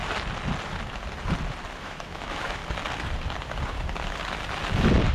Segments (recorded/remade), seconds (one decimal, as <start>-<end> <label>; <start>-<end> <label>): 0.0-1.8 recorded; 1.8-2.6 remade; 2.6-5.1 recorded